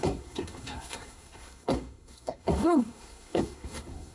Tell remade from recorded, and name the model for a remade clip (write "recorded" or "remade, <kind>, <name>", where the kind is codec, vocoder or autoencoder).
remade, codec, SNAC